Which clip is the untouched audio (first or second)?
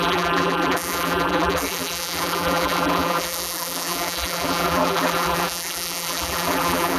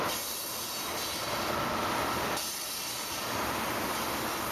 second